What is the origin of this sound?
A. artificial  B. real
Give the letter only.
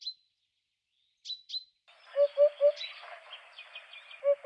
B